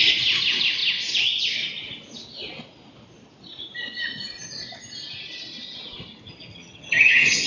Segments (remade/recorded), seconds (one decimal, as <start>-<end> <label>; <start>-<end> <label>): 0.0-6.5 recorded; 6.5-7.5 remade